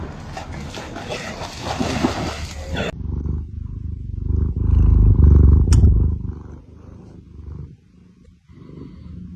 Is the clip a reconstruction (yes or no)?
no